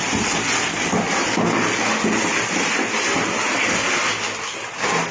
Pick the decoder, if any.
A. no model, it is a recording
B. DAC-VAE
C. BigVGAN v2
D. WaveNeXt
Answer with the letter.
A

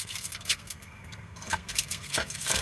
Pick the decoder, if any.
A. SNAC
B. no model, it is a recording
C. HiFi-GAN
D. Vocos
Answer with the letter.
A